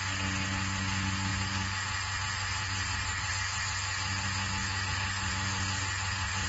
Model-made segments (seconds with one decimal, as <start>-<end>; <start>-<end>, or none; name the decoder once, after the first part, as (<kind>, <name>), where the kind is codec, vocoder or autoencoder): none

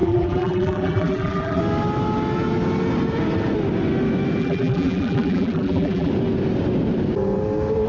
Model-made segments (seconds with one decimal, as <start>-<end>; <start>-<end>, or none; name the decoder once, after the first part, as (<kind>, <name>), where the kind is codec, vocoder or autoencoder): 0.0-1.6 (vocoder, BigVGAN v2); 4.4-6.1

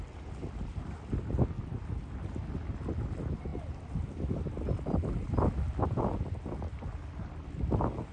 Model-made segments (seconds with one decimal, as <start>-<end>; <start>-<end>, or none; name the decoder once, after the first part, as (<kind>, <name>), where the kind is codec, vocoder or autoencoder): none

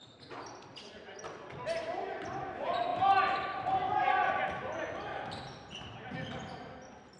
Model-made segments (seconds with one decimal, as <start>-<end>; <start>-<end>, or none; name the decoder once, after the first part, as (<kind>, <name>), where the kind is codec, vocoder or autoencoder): none

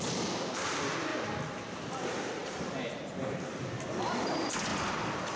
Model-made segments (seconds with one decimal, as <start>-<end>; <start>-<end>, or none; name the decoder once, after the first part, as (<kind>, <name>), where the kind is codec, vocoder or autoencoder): 1.1-2.0 (vocoder, BigVGAN v2); 2.4-3.1; 4.7-5.4